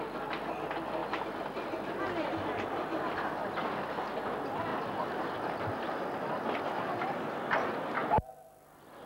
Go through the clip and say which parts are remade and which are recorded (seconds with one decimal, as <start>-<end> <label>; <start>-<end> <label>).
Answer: 0.0-9.1 recorded